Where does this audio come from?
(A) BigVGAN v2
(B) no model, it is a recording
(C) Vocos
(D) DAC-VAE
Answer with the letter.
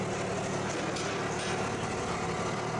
B